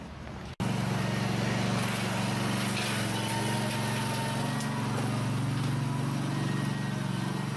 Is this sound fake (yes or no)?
no